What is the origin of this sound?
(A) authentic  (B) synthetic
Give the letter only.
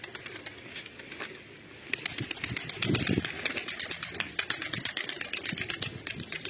A